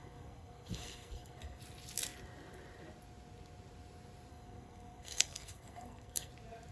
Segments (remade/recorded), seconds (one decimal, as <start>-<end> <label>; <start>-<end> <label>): 0.0-1.6 remade; 1.6-4.3 recorded; 4.3-6.3 remade; 6.3-6.7 recorded